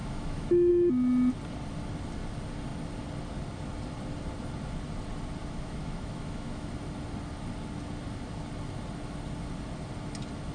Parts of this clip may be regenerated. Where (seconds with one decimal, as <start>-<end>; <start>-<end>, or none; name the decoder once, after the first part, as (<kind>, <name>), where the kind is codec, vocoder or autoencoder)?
0.0-0.7 (autoencoder, DAC-VAE); 5.4-6.7